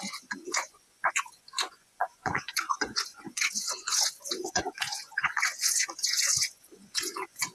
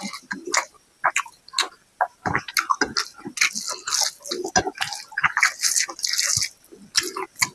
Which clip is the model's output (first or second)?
first